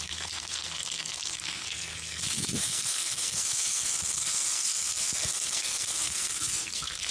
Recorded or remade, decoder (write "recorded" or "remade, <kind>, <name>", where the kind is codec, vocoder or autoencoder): remade, codec, SNAC